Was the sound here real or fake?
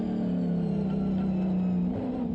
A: real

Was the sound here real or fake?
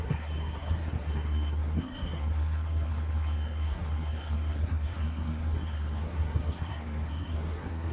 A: fake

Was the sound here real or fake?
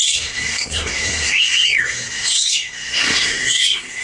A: fake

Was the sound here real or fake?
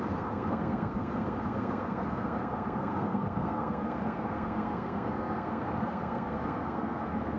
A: fake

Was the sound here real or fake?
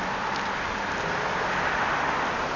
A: real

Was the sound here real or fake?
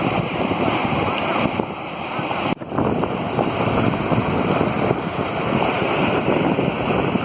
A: real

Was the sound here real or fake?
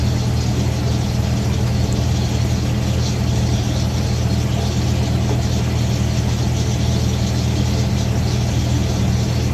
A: real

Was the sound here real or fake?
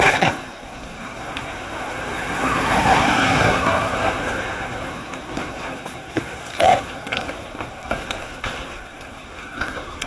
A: fake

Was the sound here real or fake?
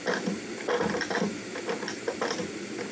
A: real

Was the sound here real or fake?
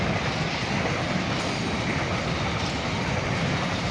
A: real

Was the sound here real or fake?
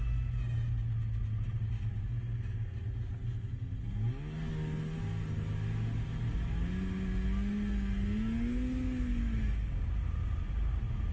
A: real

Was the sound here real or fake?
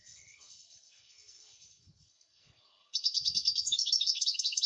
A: fake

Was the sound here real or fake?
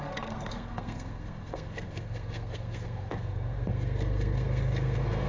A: fake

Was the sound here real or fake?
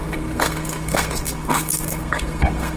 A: fake